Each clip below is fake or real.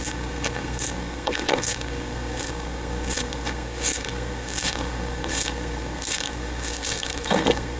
fake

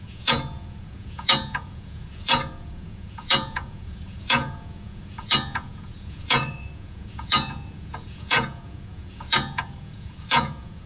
fake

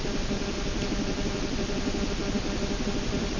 real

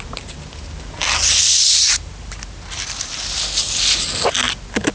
real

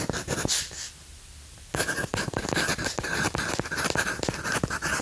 fake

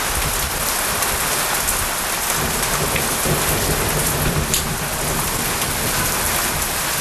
real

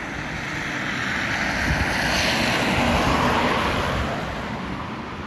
real